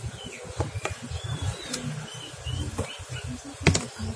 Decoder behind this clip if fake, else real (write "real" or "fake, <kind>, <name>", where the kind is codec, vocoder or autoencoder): real